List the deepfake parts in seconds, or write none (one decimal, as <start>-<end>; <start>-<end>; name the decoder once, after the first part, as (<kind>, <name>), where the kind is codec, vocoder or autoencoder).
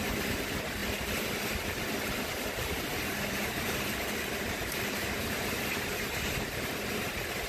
2.9-5.5 (vocoder, BigVGAN v2)